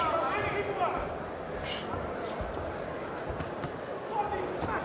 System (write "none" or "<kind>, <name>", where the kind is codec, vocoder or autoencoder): none